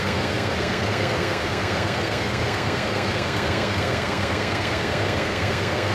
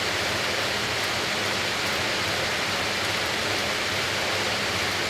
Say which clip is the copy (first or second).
first